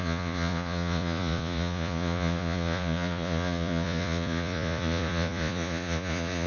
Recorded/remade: remade